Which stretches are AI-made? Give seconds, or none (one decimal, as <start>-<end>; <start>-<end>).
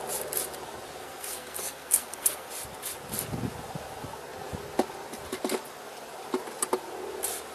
1.0-2.5